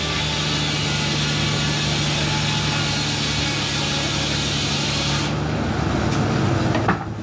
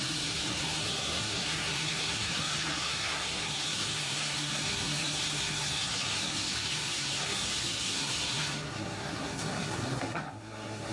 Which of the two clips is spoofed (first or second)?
second